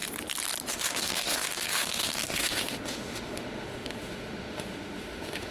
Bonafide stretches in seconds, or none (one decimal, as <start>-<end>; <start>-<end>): 0.0-0.7